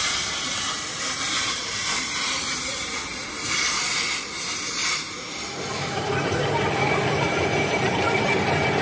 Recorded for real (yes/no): no